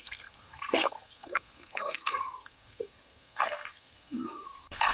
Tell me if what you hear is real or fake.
fake